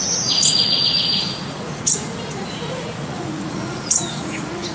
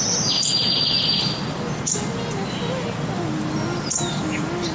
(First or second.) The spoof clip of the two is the first